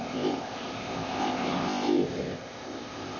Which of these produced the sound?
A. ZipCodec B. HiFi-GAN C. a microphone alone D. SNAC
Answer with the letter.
A